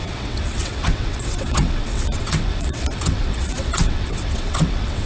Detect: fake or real fake